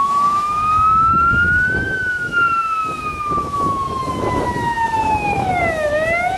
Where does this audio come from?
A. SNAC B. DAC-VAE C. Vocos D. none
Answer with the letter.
B